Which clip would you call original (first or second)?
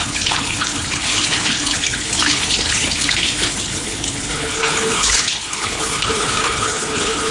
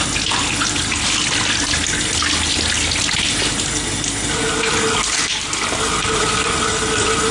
second